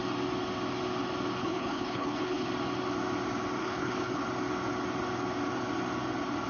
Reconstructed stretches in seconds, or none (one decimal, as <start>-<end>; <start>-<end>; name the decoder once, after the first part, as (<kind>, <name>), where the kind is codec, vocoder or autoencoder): 1.4-2.5 (codec, HILCodec); 3.6-4.2